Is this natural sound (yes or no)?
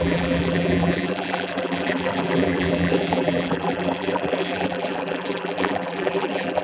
no